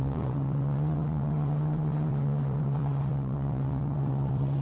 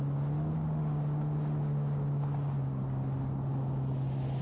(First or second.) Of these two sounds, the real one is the second